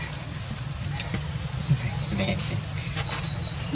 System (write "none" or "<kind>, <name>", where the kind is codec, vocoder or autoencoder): none